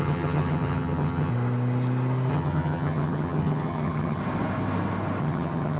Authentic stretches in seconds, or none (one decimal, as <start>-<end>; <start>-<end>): 1.3-2.3; 4.2-5.2

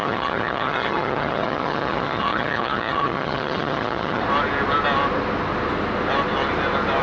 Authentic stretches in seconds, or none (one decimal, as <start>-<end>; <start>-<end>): 4.2-7.0

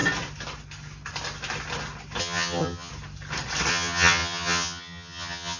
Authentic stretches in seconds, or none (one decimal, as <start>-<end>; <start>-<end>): 0.0-2.2; 2.9-3.7

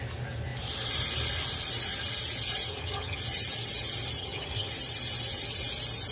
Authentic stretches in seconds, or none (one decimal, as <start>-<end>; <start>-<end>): 0.0-2.7; 3.2-4.2; 4.7-6.1

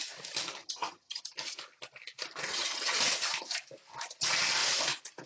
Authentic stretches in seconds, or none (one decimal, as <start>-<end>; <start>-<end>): 0.0-0.6; 1.2-2.5; 3.0-5.3

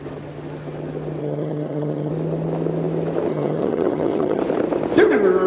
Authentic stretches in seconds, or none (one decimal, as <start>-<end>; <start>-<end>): 0.0-1.2; 2.1-3.3; 4.4-5.5